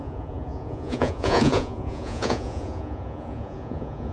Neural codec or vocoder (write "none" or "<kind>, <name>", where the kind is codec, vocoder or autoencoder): vocoder, Vocos